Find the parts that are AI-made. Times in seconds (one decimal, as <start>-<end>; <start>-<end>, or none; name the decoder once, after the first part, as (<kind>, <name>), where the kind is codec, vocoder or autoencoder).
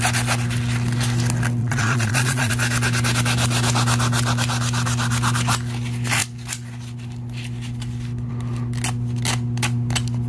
1.6-2.5 (vocoder, Vocos)